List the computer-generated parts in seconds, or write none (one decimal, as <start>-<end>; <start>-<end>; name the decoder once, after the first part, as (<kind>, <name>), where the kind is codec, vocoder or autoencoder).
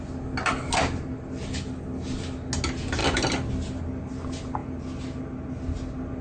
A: none